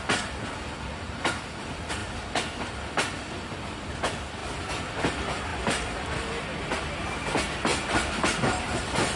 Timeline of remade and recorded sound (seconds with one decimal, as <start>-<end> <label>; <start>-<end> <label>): 0.0-9.2 recorded